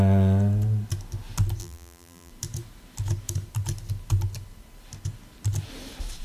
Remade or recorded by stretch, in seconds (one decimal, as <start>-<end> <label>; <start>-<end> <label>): 0.0-1.6 recorded; 1.6-2.3 remade; 2.3-6.2 recorded